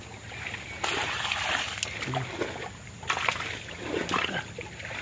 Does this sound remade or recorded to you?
recorded